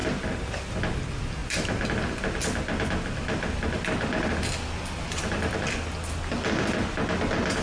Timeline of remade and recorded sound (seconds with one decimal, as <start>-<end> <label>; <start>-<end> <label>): 0.0-7.6 recorded